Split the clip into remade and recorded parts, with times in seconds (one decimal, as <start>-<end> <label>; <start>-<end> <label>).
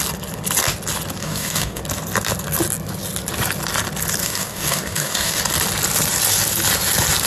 0.0-1.2 recorded; 1.2-1.8 remade; 1.8-4.2 recorded; 4.2-5.4 remade; 5.4-7.3 recorded